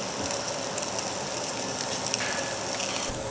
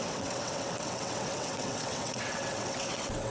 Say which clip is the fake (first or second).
second